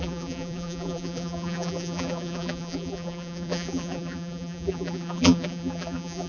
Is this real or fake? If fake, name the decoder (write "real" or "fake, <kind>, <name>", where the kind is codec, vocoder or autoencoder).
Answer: fake, vocoder, BigVGAN v2